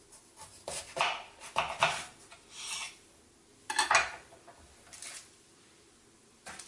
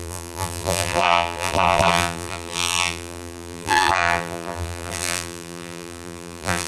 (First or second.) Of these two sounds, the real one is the first